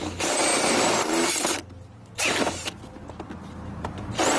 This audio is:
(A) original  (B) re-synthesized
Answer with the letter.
A